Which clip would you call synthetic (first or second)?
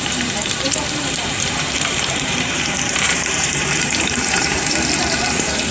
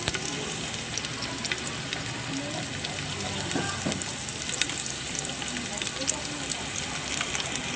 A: first